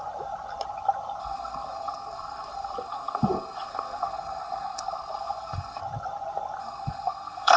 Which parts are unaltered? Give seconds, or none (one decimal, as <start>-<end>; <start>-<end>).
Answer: 0.0-1.2; 5.8-6.6